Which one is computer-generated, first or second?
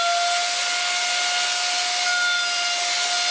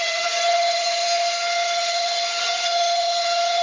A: second